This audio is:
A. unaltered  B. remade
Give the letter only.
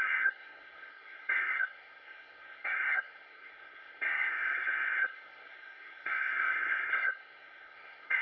B